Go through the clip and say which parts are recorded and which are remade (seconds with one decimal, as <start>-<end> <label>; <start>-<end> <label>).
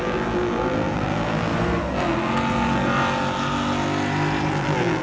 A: 0.0-1.5 remade; 1.5-4.5 recorded; 4.5-5.0 remade